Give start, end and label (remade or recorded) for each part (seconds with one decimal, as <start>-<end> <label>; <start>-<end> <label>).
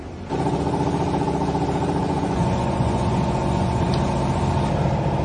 0.0-2.0 recorded; 2.0-3.9 remade; 3.9-5.2 recorded